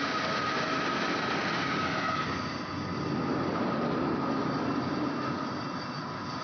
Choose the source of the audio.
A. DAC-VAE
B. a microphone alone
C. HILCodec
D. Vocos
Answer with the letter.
B